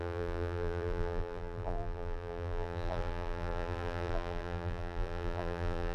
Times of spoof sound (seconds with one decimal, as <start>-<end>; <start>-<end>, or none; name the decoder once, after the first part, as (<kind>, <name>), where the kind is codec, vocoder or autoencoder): 0.0-5.9 (vocoder, BigVGAN v2)

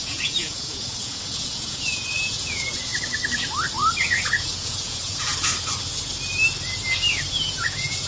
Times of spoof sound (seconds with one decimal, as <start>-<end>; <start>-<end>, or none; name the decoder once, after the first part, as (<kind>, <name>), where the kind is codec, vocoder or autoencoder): 0.0-2.9 (vocoder, Vocos); 4.1-5.3; 7.3-8.1

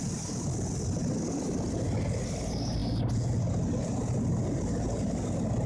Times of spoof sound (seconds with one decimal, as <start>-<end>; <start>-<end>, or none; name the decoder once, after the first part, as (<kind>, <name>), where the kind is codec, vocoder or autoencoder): none

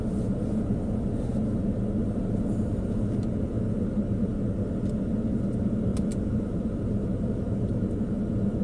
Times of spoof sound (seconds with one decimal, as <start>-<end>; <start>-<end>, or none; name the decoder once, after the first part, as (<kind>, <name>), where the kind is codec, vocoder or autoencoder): 5.9-7.9 (vocoder, BigVGAN v2)

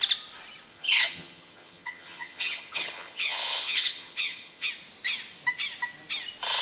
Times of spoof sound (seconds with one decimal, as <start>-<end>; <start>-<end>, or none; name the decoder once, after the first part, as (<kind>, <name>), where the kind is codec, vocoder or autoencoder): 0.7-4.7 (vocoder, HiFi-GAN)

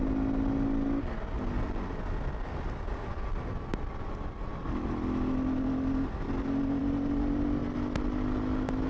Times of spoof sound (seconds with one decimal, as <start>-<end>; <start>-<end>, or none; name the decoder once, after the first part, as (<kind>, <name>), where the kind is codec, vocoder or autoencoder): none